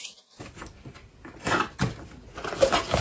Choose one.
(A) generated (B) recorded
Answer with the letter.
B